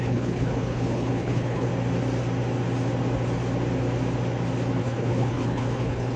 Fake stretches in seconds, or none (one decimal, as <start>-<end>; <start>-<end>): 0.0-1.7; 4.8-6.2